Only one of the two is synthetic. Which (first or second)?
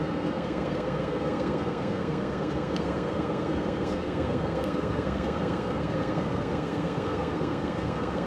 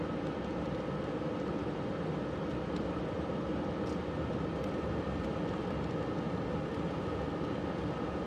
first